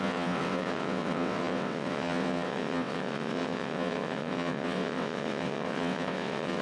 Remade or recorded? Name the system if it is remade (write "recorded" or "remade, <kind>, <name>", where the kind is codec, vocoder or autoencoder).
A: remade, vocoder, WaveNeXt